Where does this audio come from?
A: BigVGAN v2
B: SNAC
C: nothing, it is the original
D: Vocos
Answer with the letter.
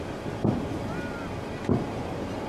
C